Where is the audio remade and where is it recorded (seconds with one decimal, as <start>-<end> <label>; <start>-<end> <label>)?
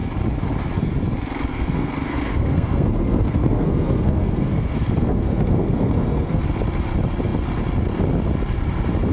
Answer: 0.0-1.5 recorded; 1.5-6.4 remade; 6.4-9.1 recorded